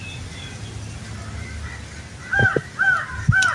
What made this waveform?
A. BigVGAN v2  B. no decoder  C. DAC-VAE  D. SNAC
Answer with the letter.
B